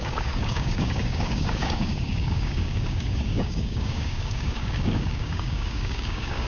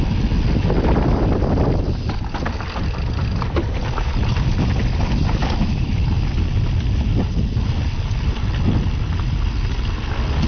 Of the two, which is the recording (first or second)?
second